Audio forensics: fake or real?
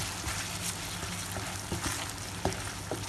real